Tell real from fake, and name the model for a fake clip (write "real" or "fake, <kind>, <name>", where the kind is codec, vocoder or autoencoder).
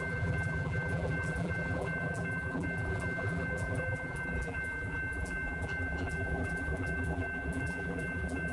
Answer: fake, vocoder, BigVGAN v2